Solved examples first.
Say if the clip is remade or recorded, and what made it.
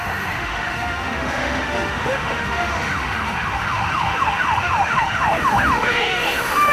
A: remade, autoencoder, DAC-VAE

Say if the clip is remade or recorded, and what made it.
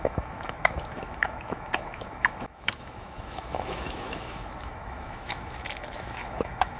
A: remade, autoencoder, DAC-VAE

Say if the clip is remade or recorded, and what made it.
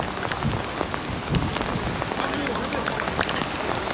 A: recorded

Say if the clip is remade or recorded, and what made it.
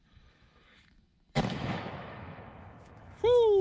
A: remade, autoencoder, DAC-VAE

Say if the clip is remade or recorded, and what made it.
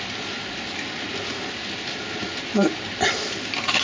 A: recorded